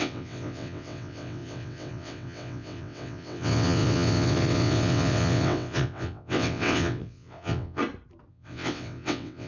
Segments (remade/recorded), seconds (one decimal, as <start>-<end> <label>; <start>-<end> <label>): 0.0-7.8 remade; 7.8-8.3 recorded; 8.3-9.5 remade